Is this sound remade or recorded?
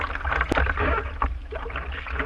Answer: recorded